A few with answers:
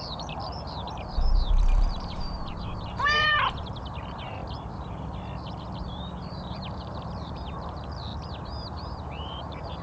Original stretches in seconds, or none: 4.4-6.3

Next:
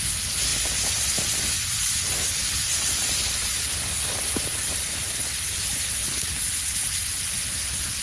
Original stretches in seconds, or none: 0.0-8.0

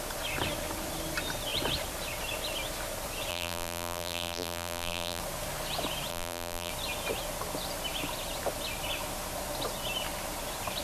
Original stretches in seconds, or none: 0.0-3.3; 5.2-6.1; 6.7-10.8

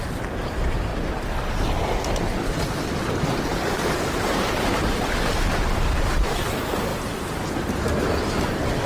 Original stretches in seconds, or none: 0.0-3.5; 6.2-8.9

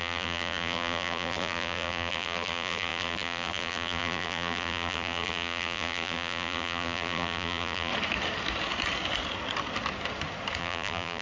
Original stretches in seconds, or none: 7.9-10.6

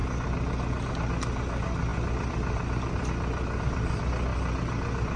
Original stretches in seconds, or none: 0.0-1.9; 3.1-5.2

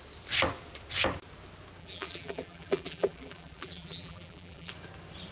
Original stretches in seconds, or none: 0.0-1.8; 4.7-5.3